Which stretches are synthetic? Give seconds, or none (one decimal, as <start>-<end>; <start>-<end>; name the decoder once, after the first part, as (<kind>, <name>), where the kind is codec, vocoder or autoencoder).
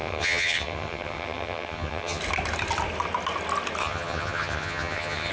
0.0-2.2 (vocoder, HiFi-GAN); 3.8-5.3